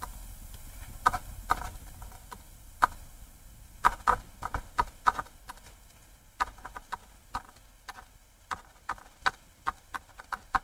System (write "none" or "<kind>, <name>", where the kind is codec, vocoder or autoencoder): none